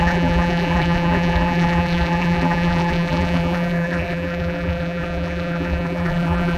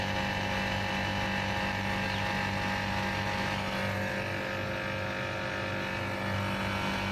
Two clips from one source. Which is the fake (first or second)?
first